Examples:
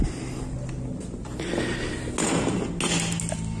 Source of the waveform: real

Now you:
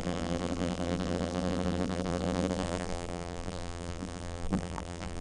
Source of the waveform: fake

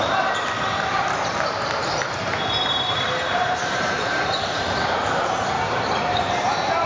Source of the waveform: fake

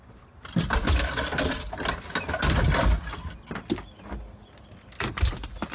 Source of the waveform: real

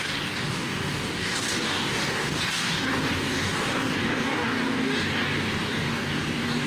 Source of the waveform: fake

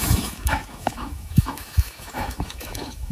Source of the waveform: fake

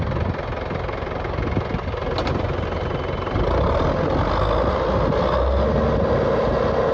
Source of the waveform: real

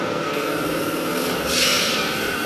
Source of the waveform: fake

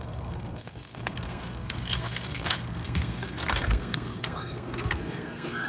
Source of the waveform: fake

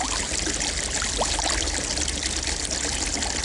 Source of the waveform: real